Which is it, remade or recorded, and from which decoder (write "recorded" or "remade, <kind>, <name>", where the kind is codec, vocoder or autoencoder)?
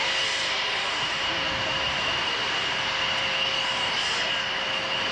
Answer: recorded